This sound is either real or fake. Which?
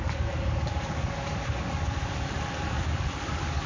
fake